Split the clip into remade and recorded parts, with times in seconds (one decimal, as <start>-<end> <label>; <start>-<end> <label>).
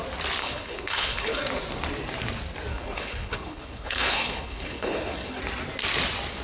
0.0-0.4 recorded; 0.4-1.4 remade; 1.4-2.7 recorded; 2.7-5.4 remade; 5.4-6.4 recorded